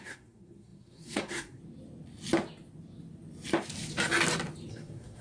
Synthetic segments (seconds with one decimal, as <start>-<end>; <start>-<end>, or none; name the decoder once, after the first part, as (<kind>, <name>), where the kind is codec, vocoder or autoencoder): 0.0-1.6 (codec, SNAC); 4.7-5.2